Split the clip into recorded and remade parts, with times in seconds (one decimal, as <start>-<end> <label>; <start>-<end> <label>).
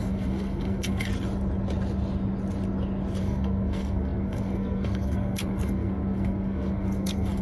0.0-1.1 remade; 1.1-3.2 recorded; 3.2-7.4 remade